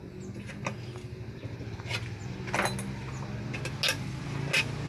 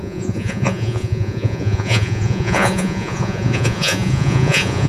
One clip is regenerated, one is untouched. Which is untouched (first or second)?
first